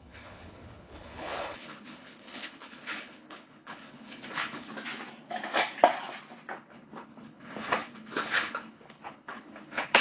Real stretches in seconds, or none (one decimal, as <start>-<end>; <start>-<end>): 4.7-6.6